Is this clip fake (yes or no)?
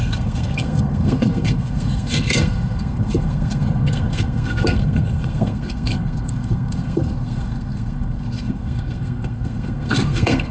yes